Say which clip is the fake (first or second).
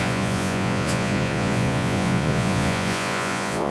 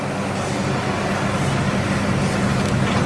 first